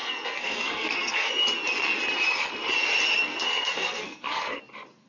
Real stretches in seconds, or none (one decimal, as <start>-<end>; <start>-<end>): 1.3-3.3; 4.6-5.1